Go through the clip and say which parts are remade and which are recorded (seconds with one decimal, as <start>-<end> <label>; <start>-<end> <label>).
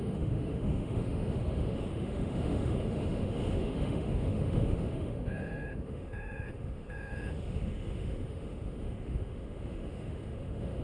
0.0-10.8 remade